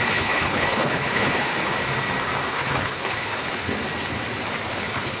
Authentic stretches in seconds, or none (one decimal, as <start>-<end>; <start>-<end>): 1.5-2.5; 3.7-4.7